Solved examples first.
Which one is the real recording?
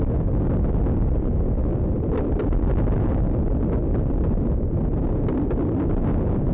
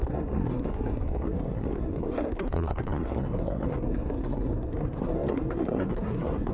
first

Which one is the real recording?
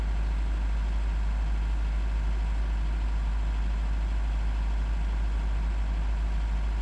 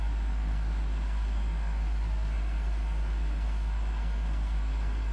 first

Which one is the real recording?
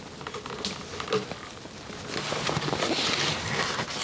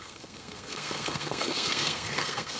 first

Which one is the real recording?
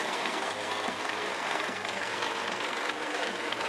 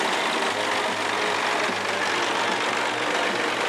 second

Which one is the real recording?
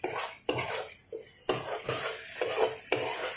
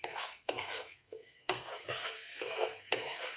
first